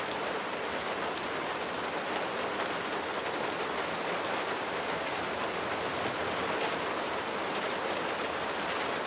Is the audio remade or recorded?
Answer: recorded